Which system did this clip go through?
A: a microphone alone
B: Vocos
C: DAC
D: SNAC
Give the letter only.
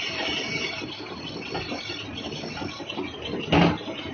A